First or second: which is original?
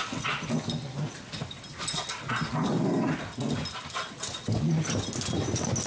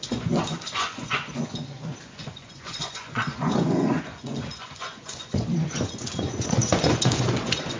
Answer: first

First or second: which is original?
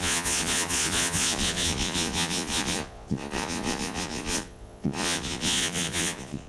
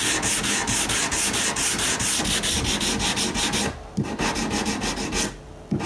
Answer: second